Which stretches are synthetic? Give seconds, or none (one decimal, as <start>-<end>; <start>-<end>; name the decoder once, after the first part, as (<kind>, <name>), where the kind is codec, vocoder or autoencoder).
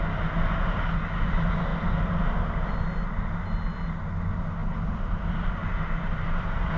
4.6-5.5 (vocoder, BigVGAN v2)